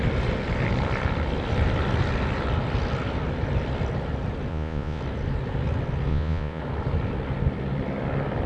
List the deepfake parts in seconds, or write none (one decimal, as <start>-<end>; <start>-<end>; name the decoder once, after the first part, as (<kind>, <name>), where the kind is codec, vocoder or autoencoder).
4.5-5.0 (vocoder, Vocos); 6.1-6.6